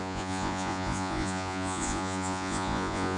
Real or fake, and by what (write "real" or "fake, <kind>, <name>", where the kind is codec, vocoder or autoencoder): fake, vocoder, Vocos